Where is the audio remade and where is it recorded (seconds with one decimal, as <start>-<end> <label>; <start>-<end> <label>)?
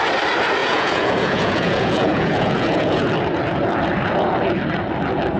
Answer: 0.0-0.6 recorded; 0.6-3.1 remade; 3.1-5.4 recorded